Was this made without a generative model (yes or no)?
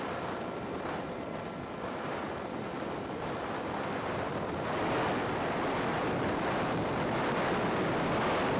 yes